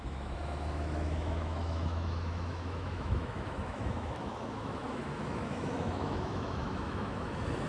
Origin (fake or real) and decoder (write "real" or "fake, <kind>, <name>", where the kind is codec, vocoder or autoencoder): fake, autoencoder, DAC-VAE